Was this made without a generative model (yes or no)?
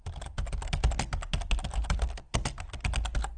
yes